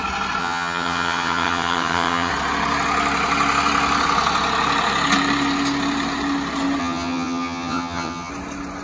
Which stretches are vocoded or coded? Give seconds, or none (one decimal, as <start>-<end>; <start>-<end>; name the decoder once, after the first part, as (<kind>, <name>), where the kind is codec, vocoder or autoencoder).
0.4-2.3 (vocoder, HiFi-GAN); 6.8-8.3